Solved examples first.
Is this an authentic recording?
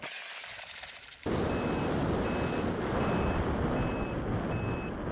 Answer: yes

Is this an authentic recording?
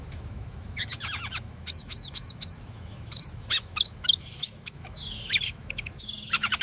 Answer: no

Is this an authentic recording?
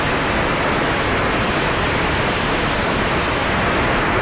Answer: yes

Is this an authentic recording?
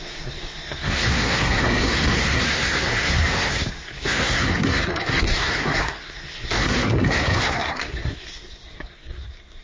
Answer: no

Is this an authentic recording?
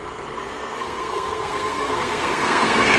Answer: no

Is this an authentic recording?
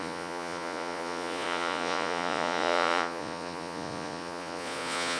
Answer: no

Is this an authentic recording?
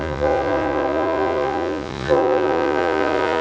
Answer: no